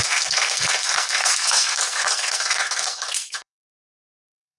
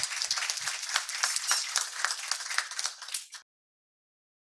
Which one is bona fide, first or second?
second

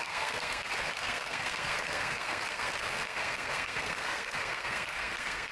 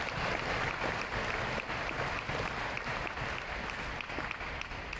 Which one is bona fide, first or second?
second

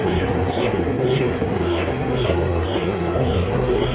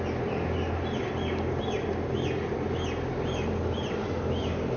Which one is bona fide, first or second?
second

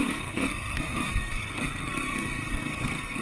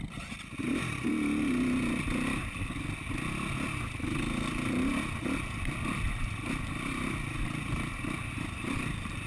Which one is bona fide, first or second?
second